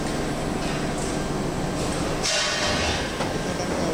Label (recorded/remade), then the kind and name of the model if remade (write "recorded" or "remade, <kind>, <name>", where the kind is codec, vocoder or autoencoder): recorded